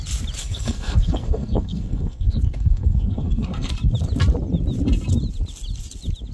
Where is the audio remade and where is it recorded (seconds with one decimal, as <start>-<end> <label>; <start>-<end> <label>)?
0.0-0.4 recorded; 0.4-3.7 remade; 3.7-6.3 recorded